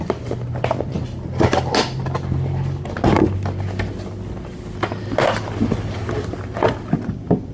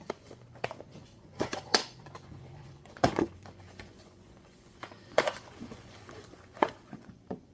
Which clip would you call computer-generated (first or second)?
second